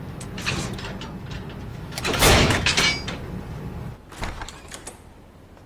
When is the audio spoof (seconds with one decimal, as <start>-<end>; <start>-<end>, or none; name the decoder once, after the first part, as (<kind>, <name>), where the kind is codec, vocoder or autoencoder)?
1.7-2.8 (autoencoder, DAC-VAE)